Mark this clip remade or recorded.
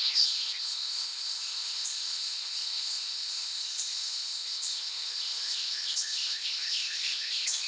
remade